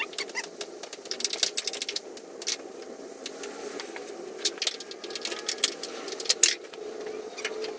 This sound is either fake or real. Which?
real